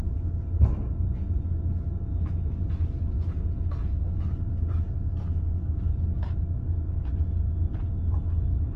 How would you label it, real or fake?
real